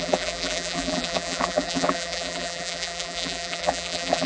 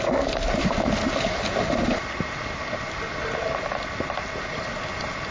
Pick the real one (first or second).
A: second